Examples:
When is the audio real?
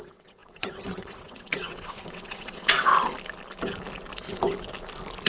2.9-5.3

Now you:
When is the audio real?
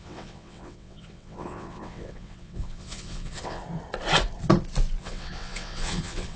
3.6-5.0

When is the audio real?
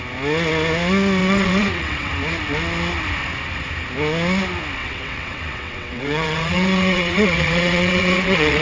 0.0-1.2; 2.1-4.8